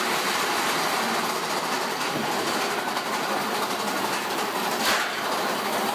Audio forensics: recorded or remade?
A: recorded